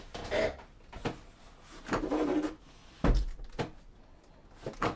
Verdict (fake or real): real